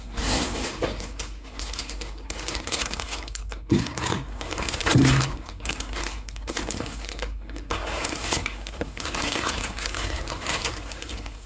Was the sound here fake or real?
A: fake